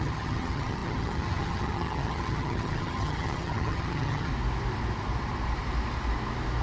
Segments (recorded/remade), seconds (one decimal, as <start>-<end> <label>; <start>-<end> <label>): 0.0-4.3 remade; 4.3-6.6 recorded